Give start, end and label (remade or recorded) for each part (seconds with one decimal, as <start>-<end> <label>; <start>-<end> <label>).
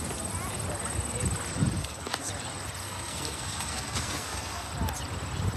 0.0-1.8 recorded; 1.8-2.3 remade; 2.3-2.8 recorded; 2.8-4.7 remade; 4.7-5.6 recorded